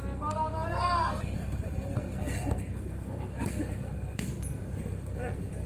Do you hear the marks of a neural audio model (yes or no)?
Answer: yes